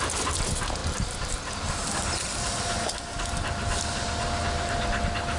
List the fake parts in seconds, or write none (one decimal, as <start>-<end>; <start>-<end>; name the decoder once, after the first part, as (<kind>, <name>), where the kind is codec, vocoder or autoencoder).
0.8-1.5 (vocoder, BigVGAN v2)